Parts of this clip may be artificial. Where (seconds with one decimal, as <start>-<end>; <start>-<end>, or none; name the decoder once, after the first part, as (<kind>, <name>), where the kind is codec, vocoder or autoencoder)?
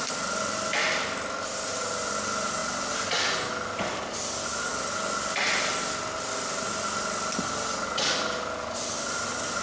none